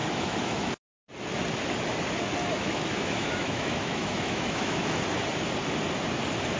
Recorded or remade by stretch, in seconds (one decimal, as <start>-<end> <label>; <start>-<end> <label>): 0.0-0.7 remade; 0.7-2.4 recorded; 2.4-5.0 remade; 5.0-6.6 recorded